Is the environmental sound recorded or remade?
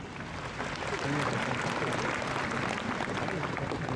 recorded